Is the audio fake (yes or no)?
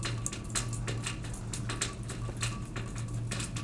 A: no